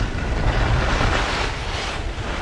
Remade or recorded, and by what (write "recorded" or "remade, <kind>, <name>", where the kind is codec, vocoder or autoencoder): recorded